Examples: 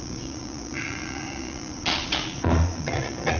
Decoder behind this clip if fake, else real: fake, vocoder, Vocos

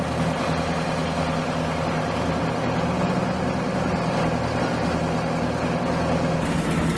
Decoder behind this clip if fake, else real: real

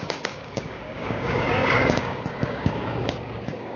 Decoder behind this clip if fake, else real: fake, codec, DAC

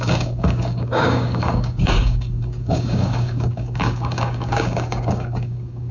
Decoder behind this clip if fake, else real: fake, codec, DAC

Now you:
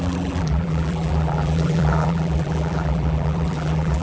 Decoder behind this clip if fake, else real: fake, vocoder, BigVGAN v2